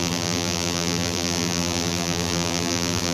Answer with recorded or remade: remade